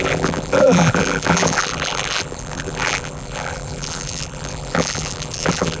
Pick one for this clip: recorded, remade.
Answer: remade